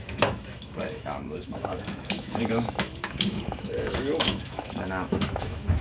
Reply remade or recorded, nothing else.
remade